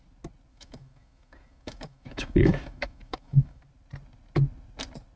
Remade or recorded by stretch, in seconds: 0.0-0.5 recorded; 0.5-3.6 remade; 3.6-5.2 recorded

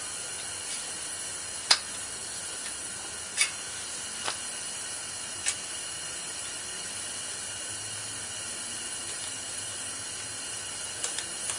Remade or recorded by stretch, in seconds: 0.0-11.6 recorded

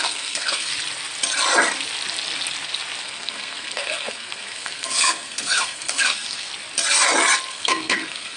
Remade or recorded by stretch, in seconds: 0.0-0.7 remade; 0.7-3.0 recorded; 3.0-6.5 remade; 6.5-7.5 recorded; 7.5-8.4 remade

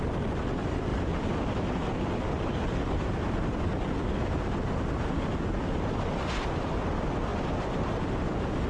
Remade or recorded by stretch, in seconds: 0.0-8.7 recorded